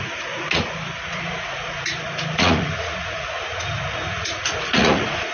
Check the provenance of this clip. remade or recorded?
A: remade